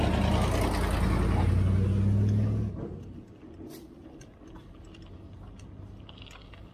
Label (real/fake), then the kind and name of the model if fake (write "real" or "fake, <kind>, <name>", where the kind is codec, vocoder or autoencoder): real